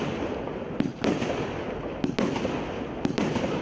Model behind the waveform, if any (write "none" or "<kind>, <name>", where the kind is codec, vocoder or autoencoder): none